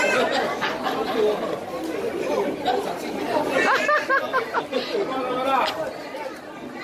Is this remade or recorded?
recorded